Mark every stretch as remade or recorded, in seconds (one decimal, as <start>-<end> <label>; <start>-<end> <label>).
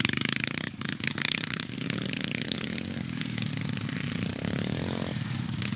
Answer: 0.0-3.5 remade; 3.5-4.3 recorded; 4.3-5.8 remade